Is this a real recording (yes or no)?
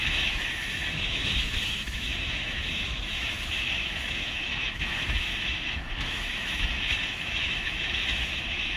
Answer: no